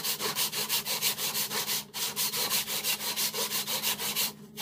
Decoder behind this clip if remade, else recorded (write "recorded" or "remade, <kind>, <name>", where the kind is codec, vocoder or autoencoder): remade, vocoder, BigVGAN v2